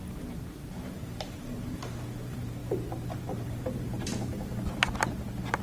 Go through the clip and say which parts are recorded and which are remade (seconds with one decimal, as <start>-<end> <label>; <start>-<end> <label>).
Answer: 0.0-2.6 remade; 2.6-3.2 recorded; 3.2-4.3 remade; 4.3-5.6 recorded